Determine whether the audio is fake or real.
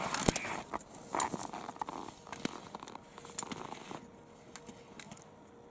real